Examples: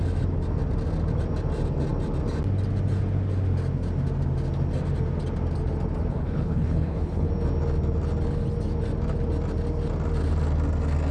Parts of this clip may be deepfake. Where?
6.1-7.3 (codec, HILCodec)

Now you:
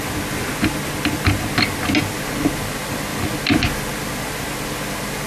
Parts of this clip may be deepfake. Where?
none

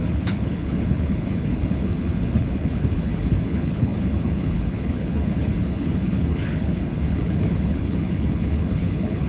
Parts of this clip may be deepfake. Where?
0.0-9.3 (codec, HILCodec)

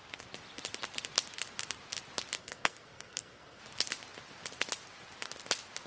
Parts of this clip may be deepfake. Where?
2.4-3.6 (codec, SNAC)

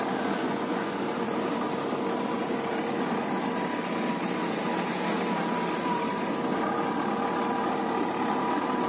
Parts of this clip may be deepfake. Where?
0.4-1.0 (vocoder, Vocos)